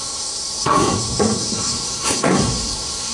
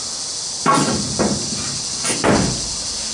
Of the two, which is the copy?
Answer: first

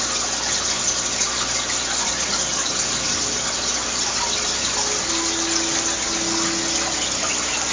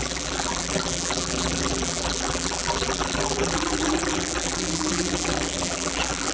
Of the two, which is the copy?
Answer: second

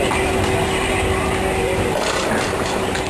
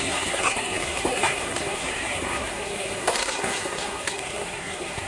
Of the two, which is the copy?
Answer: second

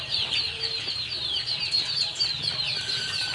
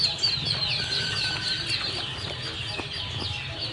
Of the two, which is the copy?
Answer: first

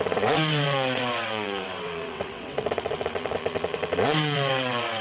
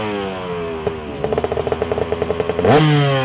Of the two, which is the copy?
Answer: first